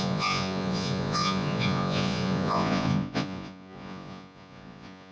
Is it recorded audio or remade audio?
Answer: remade